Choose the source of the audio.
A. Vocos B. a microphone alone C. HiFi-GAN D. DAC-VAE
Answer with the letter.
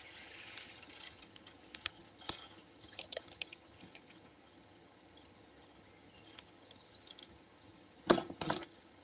C